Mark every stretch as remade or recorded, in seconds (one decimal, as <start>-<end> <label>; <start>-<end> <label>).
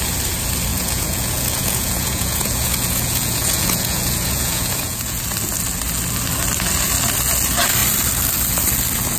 0.0-0.7 recorded; 0.7-5.2 remade; 5.2-9.2 recorded